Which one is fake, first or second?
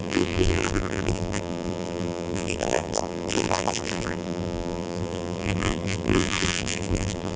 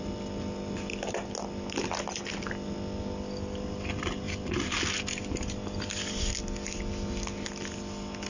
first